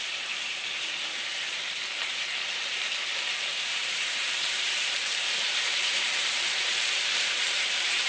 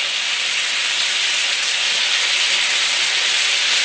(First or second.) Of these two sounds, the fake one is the first